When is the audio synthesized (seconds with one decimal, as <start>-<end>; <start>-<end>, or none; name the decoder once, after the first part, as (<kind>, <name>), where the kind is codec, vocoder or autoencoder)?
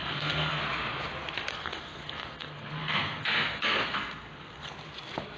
0.0-0.6 (codec, SNAC); 1.5-4.7